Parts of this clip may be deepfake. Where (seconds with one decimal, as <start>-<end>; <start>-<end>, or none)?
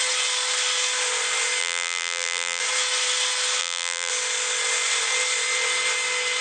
1.6-2.6; 3.6-4.1